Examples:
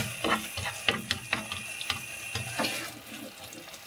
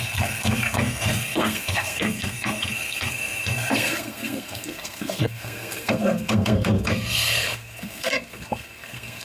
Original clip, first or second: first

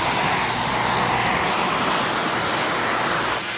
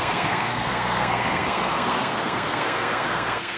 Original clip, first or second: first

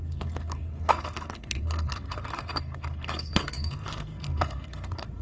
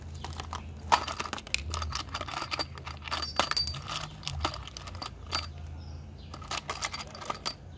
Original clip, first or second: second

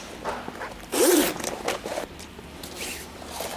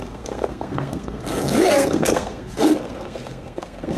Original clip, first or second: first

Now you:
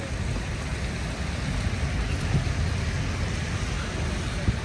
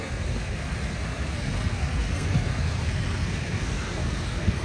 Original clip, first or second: first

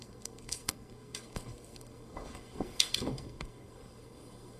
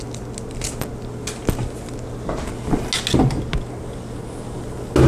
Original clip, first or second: second